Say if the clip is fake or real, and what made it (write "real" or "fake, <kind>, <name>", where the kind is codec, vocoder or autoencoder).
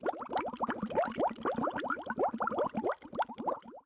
real